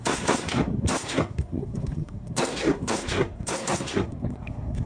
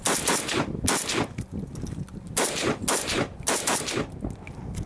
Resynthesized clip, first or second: first